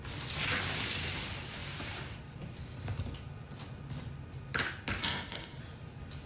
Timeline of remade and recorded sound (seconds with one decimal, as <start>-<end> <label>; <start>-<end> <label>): 0.0-5.0 recorded; 5.0-5.6 remade; 5.6-6.3 recorded